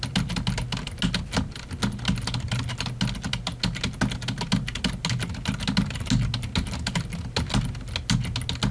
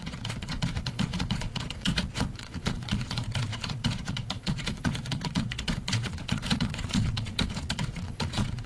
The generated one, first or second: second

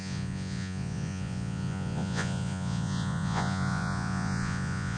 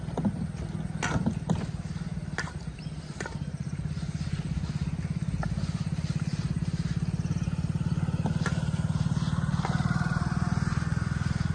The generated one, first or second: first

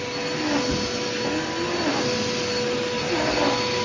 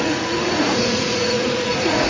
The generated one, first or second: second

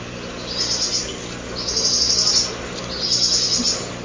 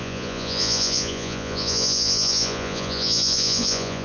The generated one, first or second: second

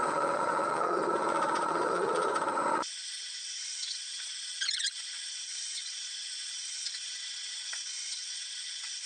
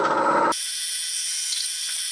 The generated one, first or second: first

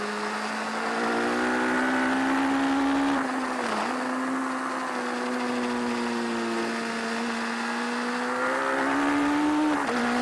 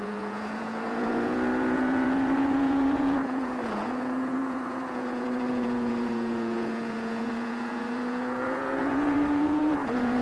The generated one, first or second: second